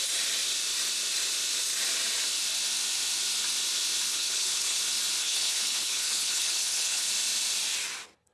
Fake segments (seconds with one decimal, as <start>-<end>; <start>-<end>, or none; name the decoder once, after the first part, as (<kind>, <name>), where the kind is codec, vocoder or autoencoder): 4.1-4.8 (codec, HILCodec); 5.2-7.1